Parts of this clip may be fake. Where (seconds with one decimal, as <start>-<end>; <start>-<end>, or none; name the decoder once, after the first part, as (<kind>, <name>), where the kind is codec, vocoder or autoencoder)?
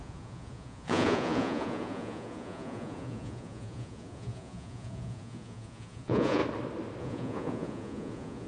0.0-6.4 (vocoder, Vocos); 7.0-8.5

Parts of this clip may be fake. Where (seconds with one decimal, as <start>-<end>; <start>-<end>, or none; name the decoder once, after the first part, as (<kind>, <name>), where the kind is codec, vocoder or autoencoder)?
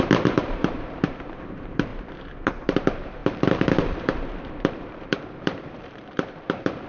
0.0-1.9 (vocoder, BigVGAN v2); 2.5-6.9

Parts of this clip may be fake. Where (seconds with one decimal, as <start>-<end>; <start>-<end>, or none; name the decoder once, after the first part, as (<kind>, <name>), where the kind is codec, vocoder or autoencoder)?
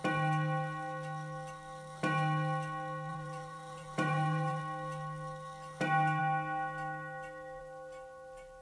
3.1-4.6 (vocoder, Vocos)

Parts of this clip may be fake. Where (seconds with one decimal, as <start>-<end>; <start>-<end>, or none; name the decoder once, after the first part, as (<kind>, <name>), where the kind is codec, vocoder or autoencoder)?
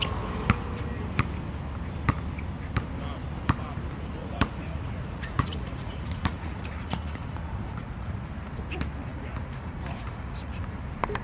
4.2-8.2 (vocoder, Vocos); 9.1-10.6